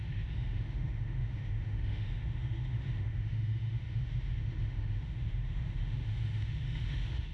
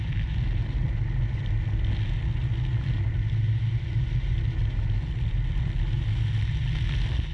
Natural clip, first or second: second